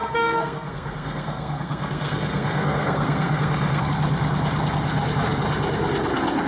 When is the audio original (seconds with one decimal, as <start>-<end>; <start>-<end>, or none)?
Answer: 3.9-6.5